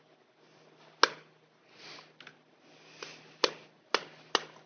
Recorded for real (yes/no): yes